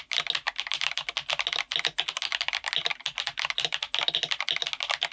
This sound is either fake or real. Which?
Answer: real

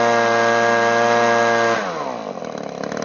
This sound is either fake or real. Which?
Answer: real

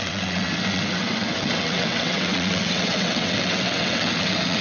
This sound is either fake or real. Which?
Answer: fake